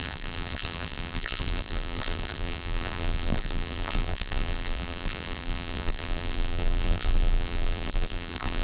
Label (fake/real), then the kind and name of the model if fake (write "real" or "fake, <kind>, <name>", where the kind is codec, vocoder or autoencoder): fake, vocoder, BigVGAN v2